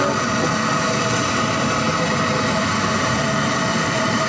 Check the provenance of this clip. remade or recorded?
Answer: recorded